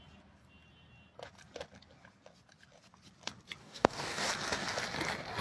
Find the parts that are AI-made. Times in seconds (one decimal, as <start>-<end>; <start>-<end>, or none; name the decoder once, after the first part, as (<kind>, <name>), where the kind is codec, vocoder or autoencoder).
3.6-4.3 (codec, DAC)

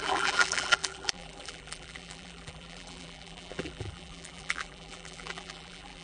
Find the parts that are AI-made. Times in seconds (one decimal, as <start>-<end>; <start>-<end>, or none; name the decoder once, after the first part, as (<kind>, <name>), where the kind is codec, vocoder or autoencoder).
0.0-6.0 (vocoder, BigVGAN v2)

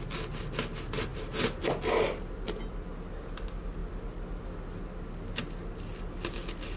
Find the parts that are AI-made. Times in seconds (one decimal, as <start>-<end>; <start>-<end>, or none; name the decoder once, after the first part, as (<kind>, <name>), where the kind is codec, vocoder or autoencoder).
none

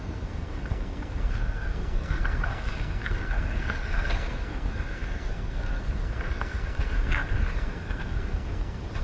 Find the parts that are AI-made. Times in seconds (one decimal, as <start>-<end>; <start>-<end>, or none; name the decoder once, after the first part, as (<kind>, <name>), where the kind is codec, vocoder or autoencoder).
0.0-9.0 (codec, SNAC)

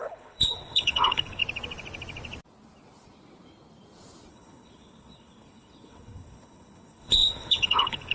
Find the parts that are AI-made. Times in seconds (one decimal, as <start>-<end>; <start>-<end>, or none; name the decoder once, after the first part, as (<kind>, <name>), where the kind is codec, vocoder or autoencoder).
0.0-1.4 (codec, HILCodec); 4.3-8.1

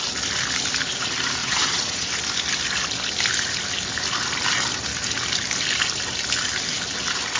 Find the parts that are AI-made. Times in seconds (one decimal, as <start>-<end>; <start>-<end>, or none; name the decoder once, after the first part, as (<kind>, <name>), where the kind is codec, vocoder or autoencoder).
1.4-2.1 (vocoder, Vocos)